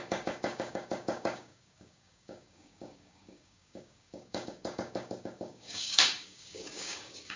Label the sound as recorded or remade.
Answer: remade